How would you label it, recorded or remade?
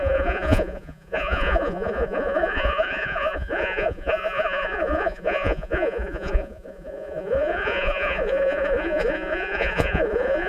remade